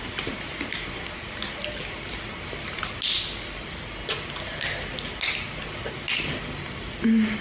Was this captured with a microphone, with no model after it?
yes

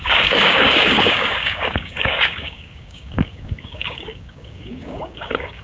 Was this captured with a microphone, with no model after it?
no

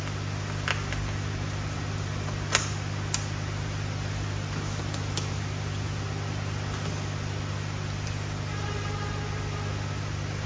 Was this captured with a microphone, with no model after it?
yes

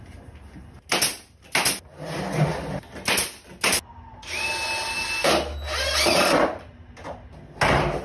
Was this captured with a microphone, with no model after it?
yes